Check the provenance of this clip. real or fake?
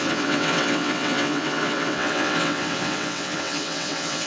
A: fake